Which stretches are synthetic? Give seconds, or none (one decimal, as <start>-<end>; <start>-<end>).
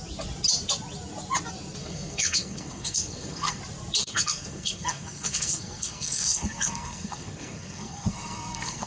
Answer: 1.8-3.6; 4.0-8.9